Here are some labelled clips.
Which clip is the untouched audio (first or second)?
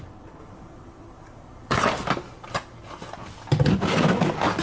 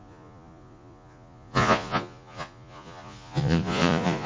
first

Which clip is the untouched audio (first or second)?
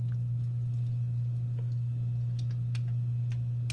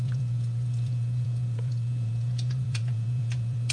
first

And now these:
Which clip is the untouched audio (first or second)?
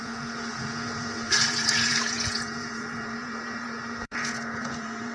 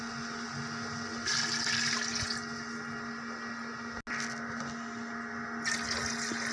second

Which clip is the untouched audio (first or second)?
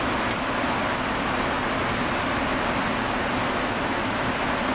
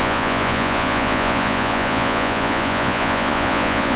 first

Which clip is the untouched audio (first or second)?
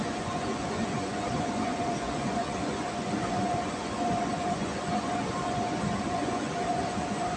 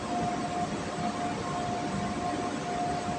second